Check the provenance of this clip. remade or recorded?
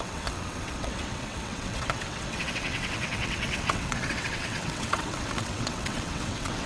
remade